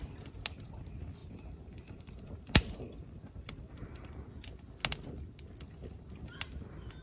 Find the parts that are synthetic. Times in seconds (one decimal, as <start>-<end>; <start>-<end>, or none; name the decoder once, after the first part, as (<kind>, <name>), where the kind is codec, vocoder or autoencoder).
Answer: 1.2-4.3 (vocoder, BigVGAN v2)